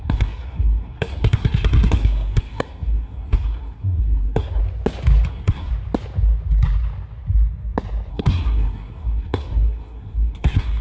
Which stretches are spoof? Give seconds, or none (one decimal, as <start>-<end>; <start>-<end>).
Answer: 0.0-4.6; 5.3-5.7; 8.1-10.8